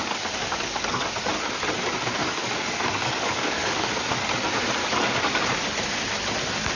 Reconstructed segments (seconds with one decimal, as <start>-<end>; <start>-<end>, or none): 0.0-1.1; 2.2-3.9; 4.8-5.4

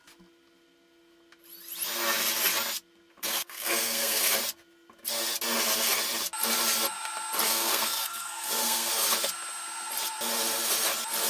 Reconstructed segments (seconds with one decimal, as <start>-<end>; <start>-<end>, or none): 3.2-4.4; 7.4-8.9

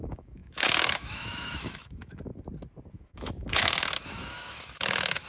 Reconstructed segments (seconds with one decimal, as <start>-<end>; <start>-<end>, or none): 0.0-2.3; 2.9-5.3

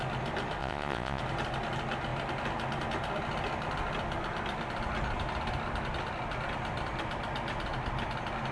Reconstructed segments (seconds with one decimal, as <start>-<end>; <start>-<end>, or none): 0.6-1.2

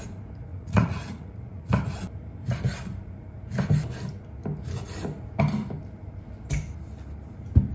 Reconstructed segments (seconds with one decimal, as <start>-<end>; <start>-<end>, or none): 0.5-1.7